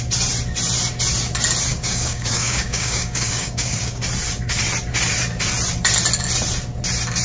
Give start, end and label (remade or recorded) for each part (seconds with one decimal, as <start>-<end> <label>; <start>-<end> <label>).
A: 0.0-1.7 recorded; 1.7-4.0 remade; 4.0-7.2 recorded